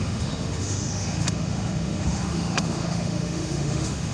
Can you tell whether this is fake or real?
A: fake